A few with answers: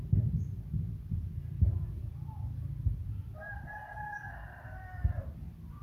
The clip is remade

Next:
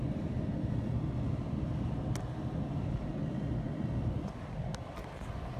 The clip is recorded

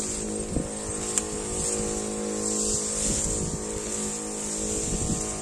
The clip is recorded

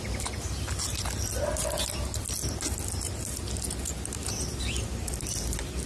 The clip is recorded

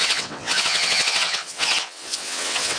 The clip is remade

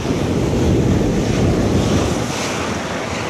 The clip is recorded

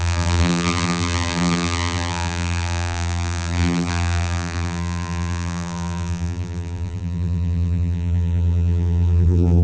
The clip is remade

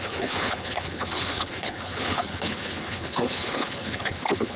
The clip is remade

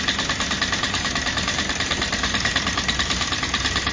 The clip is recorded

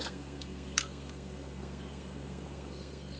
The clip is remade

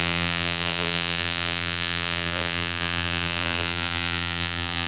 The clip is remade